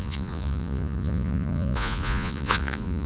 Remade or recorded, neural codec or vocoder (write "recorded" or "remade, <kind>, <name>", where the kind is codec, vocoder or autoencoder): remade, vocoder, Vocos